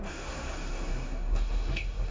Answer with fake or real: fake